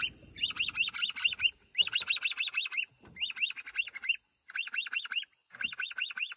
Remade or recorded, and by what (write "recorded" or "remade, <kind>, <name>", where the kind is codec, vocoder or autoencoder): recorded